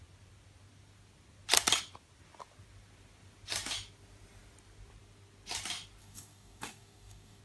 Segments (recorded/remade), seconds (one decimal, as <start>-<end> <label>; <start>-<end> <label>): 0.0-6.0 recorded; 6.0-7.4 remade